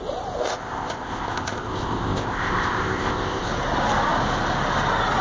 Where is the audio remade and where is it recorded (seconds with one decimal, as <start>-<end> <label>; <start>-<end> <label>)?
0.0-0.4 recorded; 0.4-3.5 remade; 3.5-5.2 recorded